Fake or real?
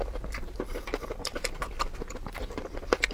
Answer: real